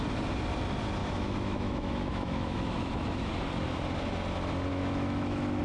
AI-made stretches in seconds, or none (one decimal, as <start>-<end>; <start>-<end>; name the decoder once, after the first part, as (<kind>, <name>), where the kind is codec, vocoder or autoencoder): 1.0-3.3 (autoencoder, DAC-VAE); 4.7-5.6

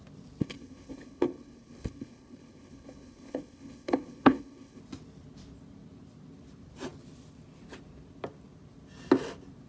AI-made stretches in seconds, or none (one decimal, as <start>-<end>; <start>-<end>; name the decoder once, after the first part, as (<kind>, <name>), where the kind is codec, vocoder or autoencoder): 0.4-4.8 (codec, HILCodec)

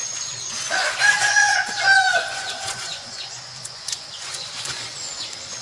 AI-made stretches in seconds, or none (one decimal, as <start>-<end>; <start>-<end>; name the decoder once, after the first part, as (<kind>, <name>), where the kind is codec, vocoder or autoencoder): 0.0-5.6 (vocoder, Vocos)

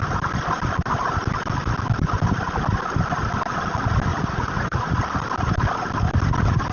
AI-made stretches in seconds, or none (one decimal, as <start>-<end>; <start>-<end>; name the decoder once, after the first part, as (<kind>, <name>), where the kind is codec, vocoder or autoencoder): 4.1-5.0 (vocoder, Vocos)